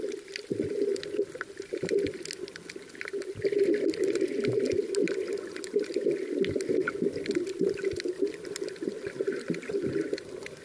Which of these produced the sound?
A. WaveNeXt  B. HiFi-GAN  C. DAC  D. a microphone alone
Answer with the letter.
D